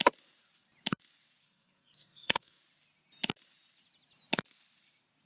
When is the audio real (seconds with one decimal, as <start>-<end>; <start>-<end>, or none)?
0.0-1.4; 2.6-5.3